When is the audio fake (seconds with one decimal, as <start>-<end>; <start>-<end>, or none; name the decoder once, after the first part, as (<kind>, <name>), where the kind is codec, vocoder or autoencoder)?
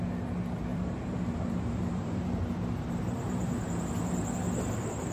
0.7-3.8 (vocoder, BigVGAN v2)